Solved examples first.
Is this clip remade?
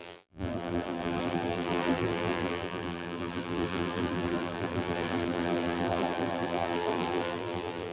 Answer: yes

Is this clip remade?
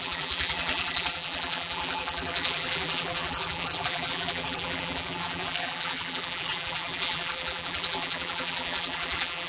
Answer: yes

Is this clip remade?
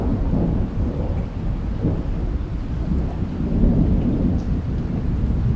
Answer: no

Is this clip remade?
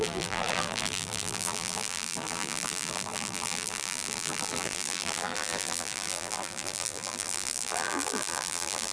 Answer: yes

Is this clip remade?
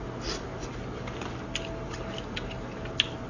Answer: no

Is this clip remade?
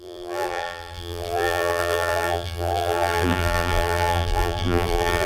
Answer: yes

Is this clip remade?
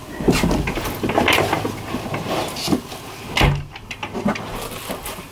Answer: no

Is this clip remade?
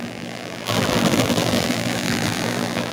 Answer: yes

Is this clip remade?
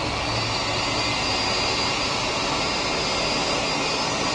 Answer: no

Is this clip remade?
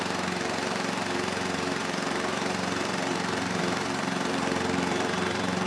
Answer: yes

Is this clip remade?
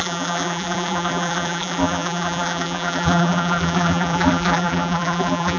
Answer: yes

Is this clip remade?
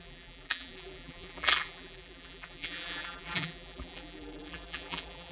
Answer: yes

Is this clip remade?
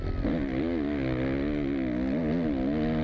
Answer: no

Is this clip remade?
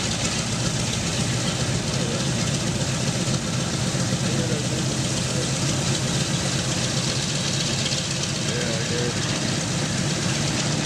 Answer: no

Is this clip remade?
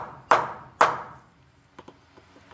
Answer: no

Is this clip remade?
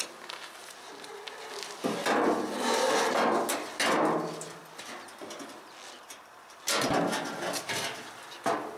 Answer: no